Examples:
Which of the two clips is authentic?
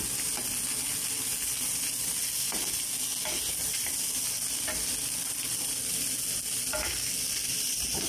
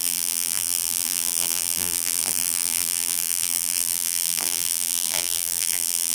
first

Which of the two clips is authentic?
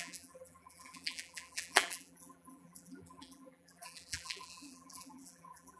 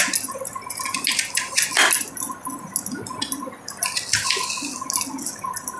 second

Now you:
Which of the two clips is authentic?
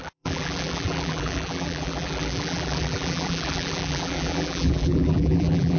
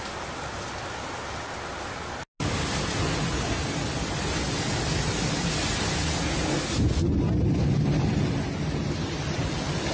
second